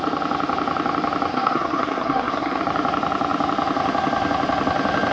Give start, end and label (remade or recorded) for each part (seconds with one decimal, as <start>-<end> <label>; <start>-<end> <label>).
0.0-1.3 recorded; 1.3-2.6 remade; 2.6-5.1 recorded